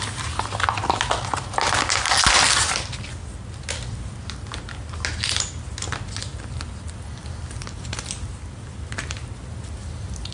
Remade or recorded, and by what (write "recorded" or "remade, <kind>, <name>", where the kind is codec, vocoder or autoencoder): recorded